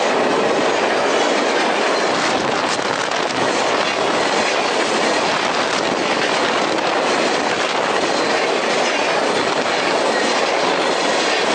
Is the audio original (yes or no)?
yes